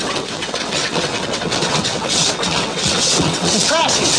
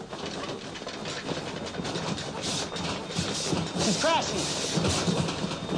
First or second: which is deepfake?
first